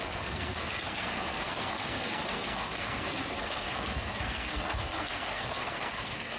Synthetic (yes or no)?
yes